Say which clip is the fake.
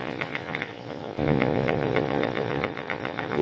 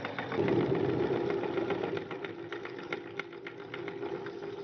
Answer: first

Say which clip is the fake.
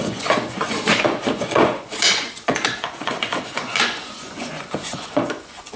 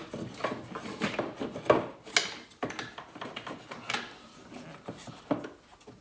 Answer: first